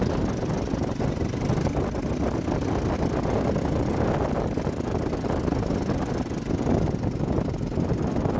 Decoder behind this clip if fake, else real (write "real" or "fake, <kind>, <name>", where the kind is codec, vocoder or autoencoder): real